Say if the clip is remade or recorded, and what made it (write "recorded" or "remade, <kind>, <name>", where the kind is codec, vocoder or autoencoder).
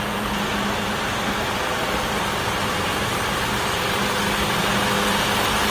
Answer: recorded